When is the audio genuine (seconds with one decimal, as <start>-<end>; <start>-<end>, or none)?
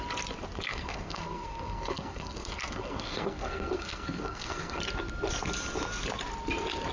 0.0-0.7; 4.8-6.9